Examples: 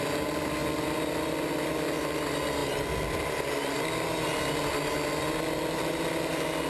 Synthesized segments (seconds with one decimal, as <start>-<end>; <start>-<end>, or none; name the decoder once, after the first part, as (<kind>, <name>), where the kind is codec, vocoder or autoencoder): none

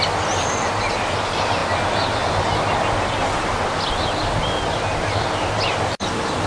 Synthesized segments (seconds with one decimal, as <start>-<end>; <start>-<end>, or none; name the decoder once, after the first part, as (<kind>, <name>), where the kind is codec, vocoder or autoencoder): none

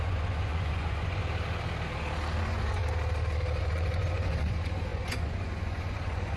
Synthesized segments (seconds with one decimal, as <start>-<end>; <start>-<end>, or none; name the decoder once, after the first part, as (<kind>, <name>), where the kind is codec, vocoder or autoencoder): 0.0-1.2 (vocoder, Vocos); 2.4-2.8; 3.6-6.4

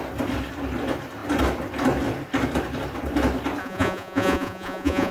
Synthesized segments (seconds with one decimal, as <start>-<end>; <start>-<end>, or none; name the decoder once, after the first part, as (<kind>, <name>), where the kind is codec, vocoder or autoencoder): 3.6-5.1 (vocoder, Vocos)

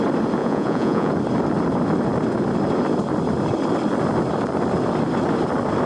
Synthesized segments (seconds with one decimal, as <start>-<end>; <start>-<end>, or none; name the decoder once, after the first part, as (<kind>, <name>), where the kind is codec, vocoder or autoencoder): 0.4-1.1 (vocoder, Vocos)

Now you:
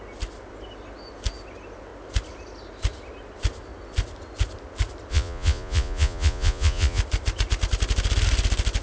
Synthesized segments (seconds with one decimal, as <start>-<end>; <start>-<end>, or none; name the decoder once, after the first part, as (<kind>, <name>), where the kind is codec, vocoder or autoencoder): 5.1-7.0 (vocoder, Vocos)